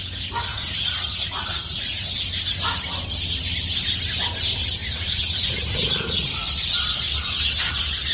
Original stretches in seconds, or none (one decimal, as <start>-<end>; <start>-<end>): 0.0-0.5; 2.1-4.8; 6.4-8.1